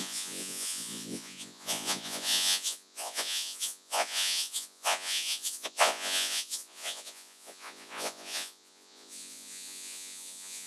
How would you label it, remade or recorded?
remade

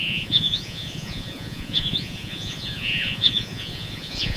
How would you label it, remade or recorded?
remade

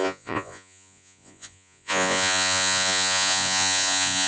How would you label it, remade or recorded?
remade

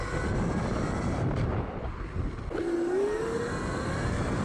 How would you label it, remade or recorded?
recorded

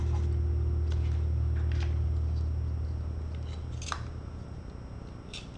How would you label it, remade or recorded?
recorded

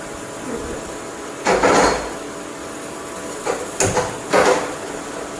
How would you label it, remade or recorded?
recorded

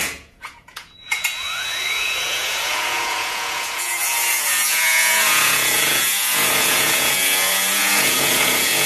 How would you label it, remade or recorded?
remade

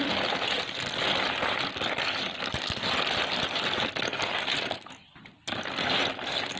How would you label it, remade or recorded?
recorded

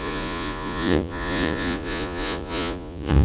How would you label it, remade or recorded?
remade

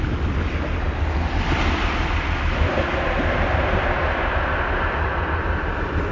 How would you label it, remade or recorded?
recorded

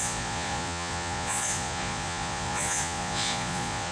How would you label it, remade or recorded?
remade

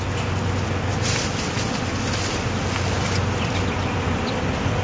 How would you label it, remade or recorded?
recorded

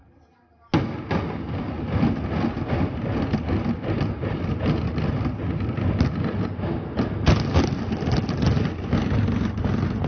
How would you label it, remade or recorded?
recorded